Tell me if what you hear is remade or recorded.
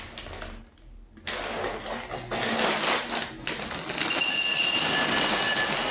recorded